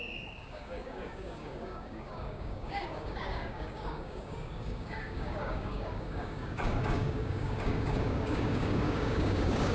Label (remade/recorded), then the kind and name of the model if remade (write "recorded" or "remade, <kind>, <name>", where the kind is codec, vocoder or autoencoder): remade, codec, DAC